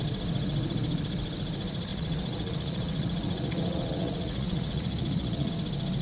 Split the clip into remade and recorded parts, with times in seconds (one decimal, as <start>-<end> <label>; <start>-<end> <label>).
0.0-1.9 recorded; 1.9-5.5 remade; 5.5-6.0 recorded